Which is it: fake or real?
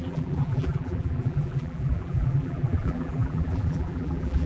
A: fake